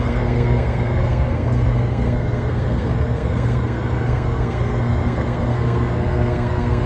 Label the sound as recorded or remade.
remade